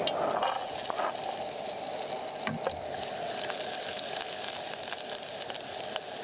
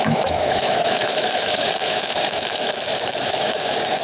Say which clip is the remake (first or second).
second